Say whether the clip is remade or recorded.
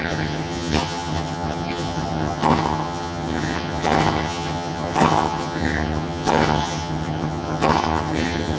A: remade